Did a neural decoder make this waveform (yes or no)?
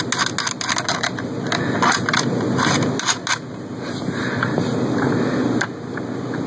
no